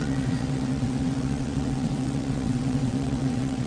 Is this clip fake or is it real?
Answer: fake